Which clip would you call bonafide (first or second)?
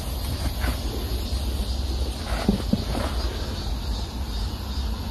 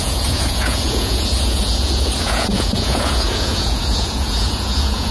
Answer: first